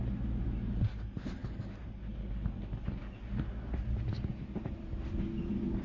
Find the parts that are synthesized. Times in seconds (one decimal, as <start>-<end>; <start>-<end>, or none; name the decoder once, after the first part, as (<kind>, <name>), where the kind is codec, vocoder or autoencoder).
none